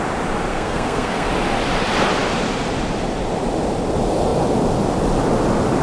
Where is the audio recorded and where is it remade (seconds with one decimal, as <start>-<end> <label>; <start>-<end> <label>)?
0.0-0.5 recorded; 0.5-1.3 remade; 1.3-5.8 recorded